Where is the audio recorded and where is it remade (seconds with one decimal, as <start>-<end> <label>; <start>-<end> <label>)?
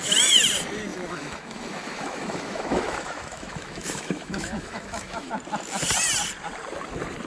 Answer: 0.0-0.9 recorded; 0.9-5.3 remade; 5.3-7.3 recorded